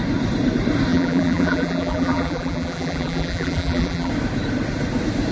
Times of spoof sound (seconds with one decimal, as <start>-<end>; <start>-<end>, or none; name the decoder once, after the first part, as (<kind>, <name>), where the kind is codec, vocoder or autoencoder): 0.9-4.1 (vocoder, BigVGAN v2)